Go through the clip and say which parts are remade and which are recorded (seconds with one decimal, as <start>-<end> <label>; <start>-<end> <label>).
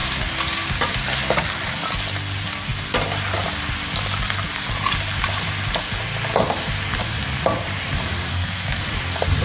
0.0-8.3 recorded; 8.3-8.8 remade; 8.8-9.4 recorded